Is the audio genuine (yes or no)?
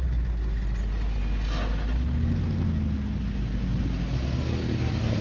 yes